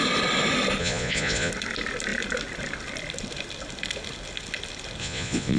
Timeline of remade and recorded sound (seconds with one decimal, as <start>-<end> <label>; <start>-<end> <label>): 0.0-0.8 recorded; 0.8-1.5 remade; 1.5-5.0 recorded; 5.0-5.6 remade